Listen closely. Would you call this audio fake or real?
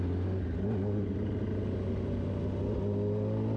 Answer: real